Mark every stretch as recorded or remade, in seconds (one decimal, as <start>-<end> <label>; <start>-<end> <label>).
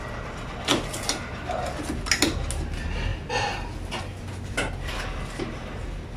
0.0-6.2 recorded